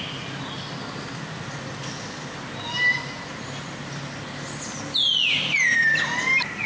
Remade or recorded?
recorded